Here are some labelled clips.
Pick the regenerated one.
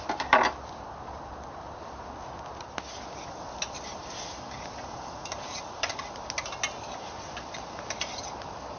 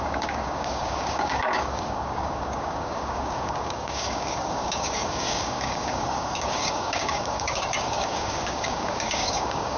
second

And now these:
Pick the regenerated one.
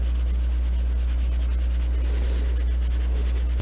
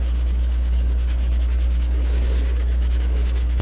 second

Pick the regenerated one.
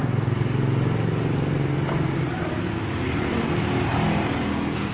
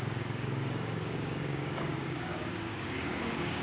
second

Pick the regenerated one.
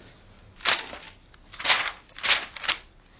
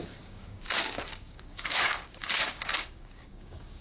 second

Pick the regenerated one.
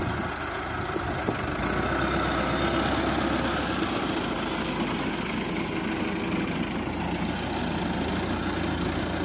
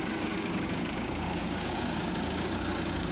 second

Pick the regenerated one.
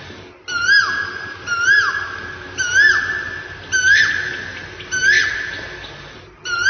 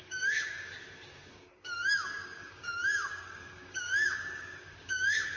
second